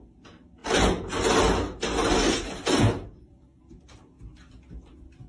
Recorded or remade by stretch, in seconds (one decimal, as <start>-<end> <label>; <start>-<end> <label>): 0.0-5.3 recorded